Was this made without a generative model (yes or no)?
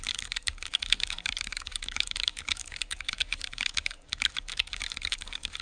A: no